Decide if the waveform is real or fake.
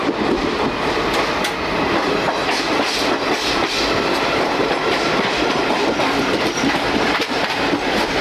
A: real